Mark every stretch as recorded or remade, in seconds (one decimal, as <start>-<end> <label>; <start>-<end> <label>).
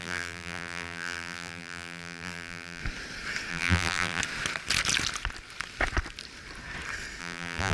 0.0-2.8 remade; 2.8-3.5 recorded; 3.5-4.2 remade; 4.2-7.2 recorded; 7.2-7.7 remade